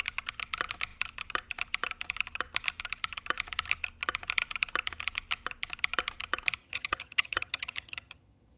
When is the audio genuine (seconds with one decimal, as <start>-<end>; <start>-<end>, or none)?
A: 0.0-6.6